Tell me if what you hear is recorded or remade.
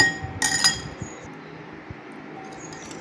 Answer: recorded